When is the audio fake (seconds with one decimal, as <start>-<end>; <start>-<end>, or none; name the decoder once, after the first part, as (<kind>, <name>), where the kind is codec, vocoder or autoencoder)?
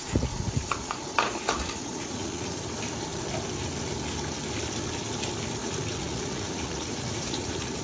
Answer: 0.0-2.6 (vocoder, Vocos); 5.6-7.8